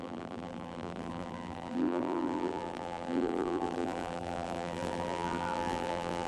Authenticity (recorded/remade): remade